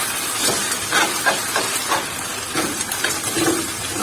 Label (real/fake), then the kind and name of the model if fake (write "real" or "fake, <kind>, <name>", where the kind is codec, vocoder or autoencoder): real